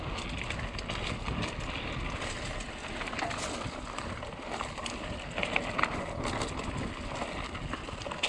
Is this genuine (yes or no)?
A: yes